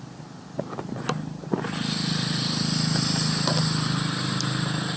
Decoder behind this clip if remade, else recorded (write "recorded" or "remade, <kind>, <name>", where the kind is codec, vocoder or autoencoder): recorded